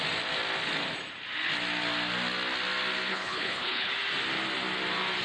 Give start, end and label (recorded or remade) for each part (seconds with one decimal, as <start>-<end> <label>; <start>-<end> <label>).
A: 0.0-3.1 recorded; 3.1-3.9 remade; 3.9-5.2 recorded